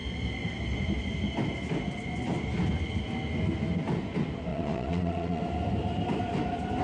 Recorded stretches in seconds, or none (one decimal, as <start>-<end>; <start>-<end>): 0.0-4.5; 5.4-6.8